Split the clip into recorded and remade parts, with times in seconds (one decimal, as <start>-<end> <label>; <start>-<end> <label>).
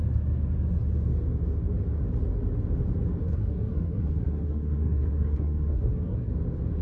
0.0-3.2 recorded; 3.2-6.3 remade; 6.3-6.8 recorded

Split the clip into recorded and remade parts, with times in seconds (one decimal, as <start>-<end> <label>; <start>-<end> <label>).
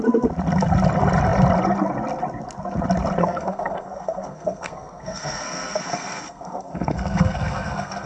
0.0-3.2 recorded; 3.2-8.1 remade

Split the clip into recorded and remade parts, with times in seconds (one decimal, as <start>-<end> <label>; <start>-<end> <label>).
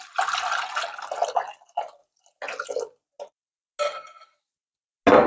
0.0-5.3 recorded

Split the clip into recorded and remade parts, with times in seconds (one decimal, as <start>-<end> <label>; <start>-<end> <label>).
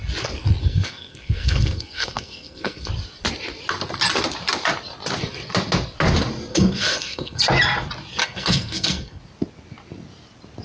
0.0-0.6 recorded; 0.6-2.9 remade; 2.9-6.5 recorded; 6.5-7.4 remade; 7.4-8.2 recorded; 8.2-9.2 remade; 9.2-10.6 recorded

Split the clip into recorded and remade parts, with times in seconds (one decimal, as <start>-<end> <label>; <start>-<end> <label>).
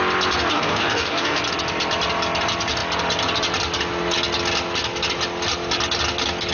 0.0-0.5 recorded; 0.5-1.4 remade; 1.4-6.5 recorded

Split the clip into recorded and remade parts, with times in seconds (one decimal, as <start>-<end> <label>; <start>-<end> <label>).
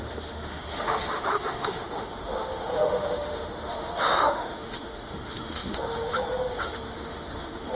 0.0-7.7 remade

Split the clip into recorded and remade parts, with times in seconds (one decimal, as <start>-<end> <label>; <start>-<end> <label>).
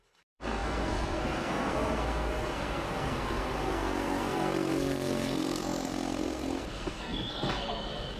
0.0-8.2 remade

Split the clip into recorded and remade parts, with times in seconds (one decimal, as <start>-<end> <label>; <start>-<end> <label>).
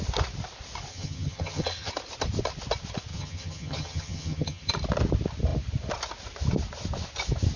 0.0-0.9 recorded; 0.9-1.9 remade; 1.9-3.1 recorded; 3.1-4.7 remade; 4.7-7.6 recorded